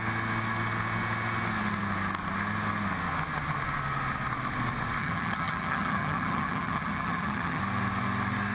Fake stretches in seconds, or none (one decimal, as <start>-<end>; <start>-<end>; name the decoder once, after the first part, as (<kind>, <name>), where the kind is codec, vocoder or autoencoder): 5.0-7.6 (vocoder, HiFi-GAN)